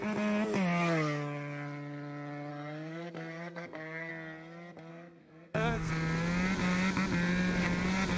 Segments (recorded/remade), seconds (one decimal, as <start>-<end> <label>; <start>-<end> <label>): 0.0-2.5 recorded; 2.5-4.1 remade; 4.1-4.9 recorded; 4.9-5.9 remade; 5.9-8.2 recorded